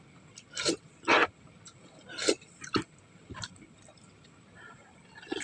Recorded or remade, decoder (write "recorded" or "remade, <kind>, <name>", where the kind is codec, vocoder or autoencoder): recorded